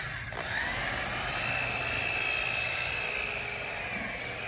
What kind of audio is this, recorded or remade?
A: recorded